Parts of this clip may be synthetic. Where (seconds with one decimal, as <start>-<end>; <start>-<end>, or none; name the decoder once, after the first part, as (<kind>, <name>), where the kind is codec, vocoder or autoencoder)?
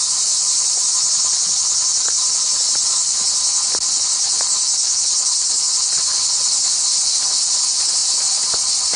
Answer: none